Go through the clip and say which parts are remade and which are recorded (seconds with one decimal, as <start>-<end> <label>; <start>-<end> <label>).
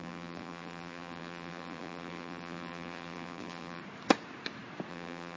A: 0.0-3.8 remade; 3.8-4.9 recorded; 4.9-5.4 remade